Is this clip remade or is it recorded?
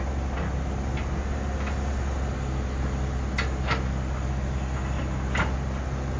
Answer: recorded